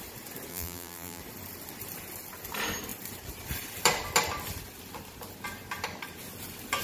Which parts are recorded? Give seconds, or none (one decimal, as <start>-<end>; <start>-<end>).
0.0-0.5; 1.2-6.8